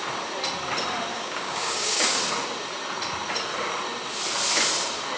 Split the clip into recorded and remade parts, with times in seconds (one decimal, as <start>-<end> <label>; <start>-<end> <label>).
0.0-1.1 recorded; 1.1-2.2 remade; 2.2-5.2 recorded